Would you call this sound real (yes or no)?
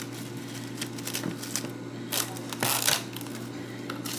yes